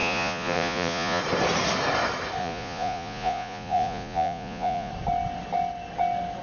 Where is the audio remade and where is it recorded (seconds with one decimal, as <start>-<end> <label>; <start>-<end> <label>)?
0.0-1.2 remade; 1.2-2.4 recorded; 2.4-4.9 remade; 4.9-6.4 recorded